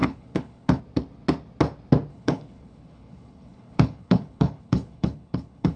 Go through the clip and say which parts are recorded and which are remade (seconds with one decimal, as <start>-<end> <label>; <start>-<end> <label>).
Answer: 0.0-0.8 remade; 0.8-2.1 recorded; 2.1-5.8 remade